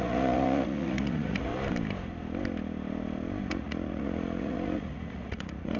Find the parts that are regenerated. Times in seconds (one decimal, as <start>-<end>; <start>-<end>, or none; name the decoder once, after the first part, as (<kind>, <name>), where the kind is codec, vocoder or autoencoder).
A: 0.0-1.5 (vocoder, Vocos); 3.5-5.8